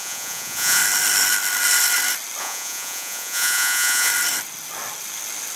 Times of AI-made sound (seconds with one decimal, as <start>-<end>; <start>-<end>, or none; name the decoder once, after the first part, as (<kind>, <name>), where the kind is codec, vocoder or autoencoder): 0.0-0.8 (vocoder, Vocos); 2.4-4.1